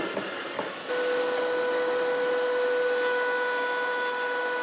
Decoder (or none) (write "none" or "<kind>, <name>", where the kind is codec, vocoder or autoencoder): none